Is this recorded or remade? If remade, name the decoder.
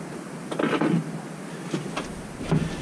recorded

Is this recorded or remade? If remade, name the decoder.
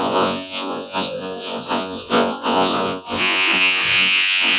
remade, vocoder, Vocos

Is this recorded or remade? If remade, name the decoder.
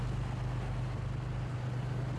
recorded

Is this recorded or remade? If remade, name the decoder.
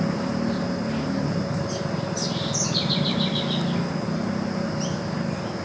recorded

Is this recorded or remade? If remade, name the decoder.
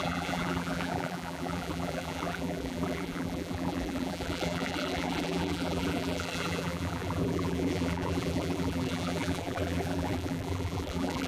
remade, vocoder, BigVGAN v2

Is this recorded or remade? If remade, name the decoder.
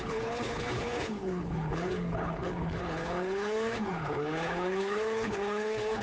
remade, codec, HILCodec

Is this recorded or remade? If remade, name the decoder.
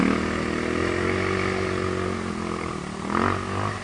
recorded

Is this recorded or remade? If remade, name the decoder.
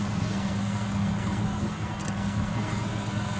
remade, codec, SNAC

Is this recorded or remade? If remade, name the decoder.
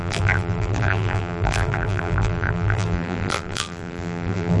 remade, vocoder, BigVGAN v2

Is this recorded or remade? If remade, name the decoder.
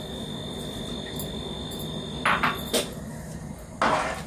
recorded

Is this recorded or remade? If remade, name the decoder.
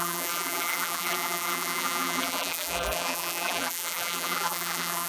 remade, vocoder, BigVGAN v2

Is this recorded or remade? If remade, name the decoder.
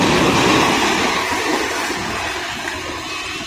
recorded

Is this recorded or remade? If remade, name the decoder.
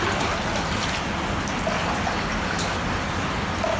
recorded